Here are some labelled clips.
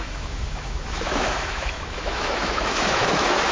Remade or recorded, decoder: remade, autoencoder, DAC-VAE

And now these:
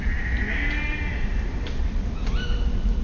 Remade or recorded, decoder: recorded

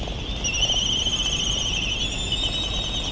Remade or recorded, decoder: recorded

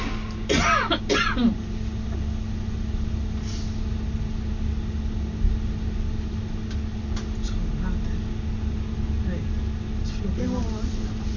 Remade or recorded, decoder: recorded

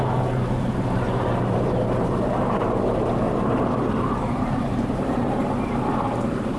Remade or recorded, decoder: remade, vocoder, BigVGAN v2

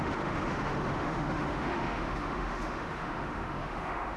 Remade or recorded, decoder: remade, autoencoder, DAC-VAE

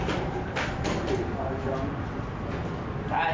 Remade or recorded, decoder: recorded